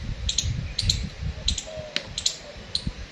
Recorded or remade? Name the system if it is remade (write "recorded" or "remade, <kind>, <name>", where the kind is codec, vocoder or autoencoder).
recorded